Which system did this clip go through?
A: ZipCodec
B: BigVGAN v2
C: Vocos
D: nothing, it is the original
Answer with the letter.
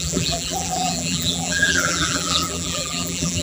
B